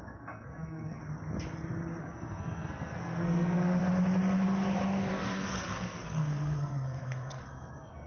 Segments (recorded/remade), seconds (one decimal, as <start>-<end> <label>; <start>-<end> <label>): 0.0-1.0 remade; 1.0-2.0 recorded; 2.0-3.8 remade; 3.8-5.1 recorded; 5.1-8.1 remade